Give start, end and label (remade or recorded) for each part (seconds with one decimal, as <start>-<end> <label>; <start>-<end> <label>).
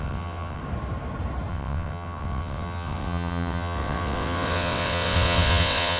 0.0-0.6 remade; 0.6-1.5 recorded; 1.5-6.0 remade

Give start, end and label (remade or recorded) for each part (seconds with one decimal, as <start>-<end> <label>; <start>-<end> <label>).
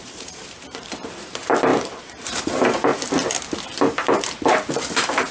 0.0-2.9 remade; 2.9-4.7 recorded; 4.7-5.3 remade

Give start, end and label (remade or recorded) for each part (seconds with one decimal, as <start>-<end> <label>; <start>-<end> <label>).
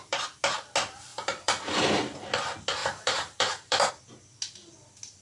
0.0-1.1 recorded; 1.1-2.0 remade; 2.0-2.8 recorded; 2.8-3.9 remade; 3.9-5.2 recorded